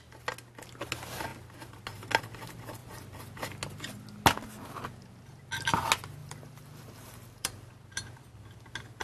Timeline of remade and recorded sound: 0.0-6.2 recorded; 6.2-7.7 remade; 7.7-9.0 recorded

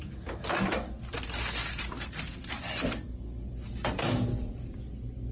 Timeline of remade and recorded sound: 0.0-5.3 recorded

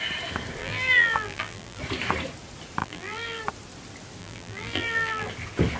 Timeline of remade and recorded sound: 0.0-0.6 recorded; 0.6-1.8 remade; 1.8-2.8 recorded; 2.8-3.4 remade; 3.4-4.2 recorded; 4.2-5.3 remade; 5.3-5.8 recorded